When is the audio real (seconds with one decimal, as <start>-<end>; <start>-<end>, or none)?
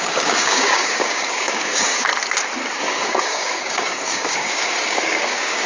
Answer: 2.1-2.8